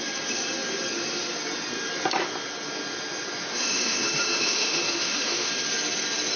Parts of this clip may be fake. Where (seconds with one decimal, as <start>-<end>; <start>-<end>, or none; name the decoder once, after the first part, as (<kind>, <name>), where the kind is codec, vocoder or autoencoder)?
3.5-5.5 (autoencoder, DAC-VAE)